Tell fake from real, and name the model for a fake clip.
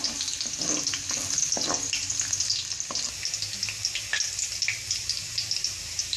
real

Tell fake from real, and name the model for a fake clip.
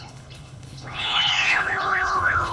fake, codec, HILCodec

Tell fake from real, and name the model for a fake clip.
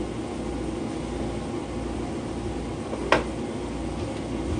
real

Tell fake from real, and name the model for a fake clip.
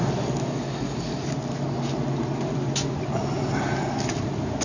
real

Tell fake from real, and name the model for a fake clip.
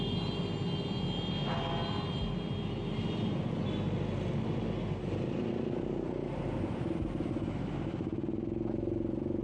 real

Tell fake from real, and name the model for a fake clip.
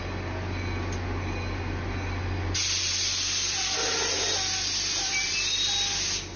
real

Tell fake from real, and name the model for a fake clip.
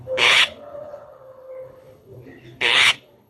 fake, codec, HILCodec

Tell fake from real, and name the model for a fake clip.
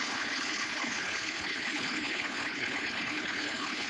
fake, codec, HILCodec